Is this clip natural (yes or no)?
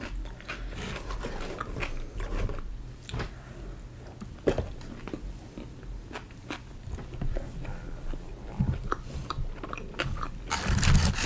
yes